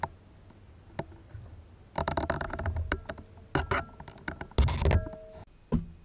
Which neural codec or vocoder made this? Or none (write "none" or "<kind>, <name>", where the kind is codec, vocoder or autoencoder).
none